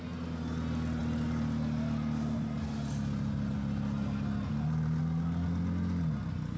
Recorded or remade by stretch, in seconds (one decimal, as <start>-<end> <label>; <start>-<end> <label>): 0.0-6.6 recorded